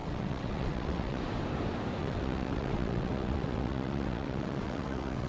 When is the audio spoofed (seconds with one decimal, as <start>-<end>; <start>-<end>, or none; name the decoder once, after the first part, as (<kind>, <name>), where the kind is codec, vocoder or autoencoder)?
0.0-1.2 (vocoder, WaveNeXt); 2.0-5.3